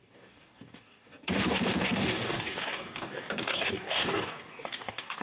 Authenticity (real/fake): fake